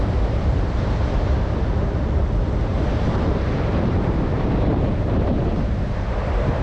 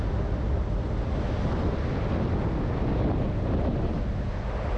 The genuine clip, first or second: second